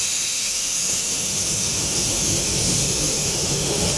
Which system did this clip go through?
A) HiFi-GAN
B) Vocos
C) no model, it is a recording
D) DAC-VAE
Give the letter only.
D